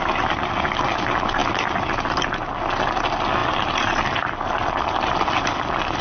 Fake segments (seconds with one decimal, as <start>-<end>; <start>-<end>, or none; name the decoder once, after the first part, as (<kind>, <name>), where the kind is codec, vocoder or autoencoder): none